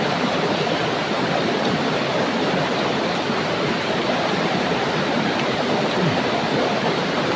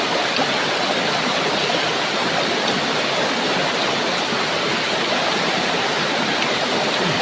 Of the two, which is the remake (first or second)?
first